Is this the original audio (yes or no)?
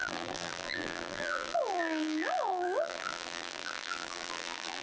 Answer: no